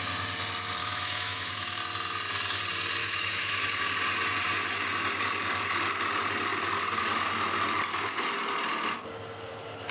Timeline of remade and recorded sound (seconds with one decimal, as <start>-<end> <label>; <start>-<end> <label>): 0.0-0.8 recorded; 0.8-1.8 remade; 1.8-3.0 recorded; 3.0-3.8 remade; 3.8-9.9 recorded